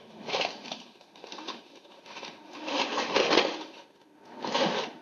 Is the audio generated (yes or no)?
yes